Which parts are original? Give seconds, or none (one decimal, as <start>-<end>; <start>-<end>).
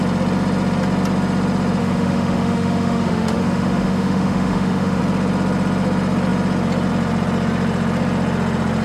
0.0-1.8; 5.0-8.8